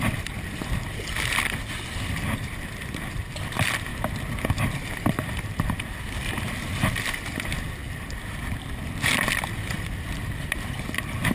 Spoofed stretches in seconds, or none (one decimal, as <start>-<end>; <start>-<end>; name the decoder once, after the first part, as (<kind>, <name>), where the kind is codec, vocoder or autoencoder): none